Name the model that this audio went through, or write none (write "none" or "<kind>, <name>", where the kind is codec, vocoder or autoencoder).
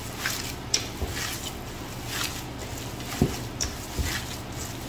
none